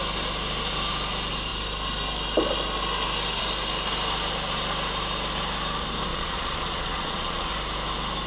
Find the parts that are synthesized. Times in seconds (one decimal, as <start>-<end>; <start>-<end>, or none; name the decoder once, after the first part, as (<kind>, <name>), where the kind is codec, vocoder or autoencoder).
6.1-7.5 (vocoder, Vocos)